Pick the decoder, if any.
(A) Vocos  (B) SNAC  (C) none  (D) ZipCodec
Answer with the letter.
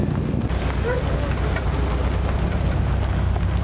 C